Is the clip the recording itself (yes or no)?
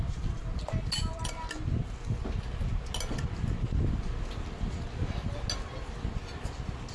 yes